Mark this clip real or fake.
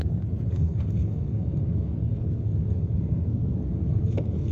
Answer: fake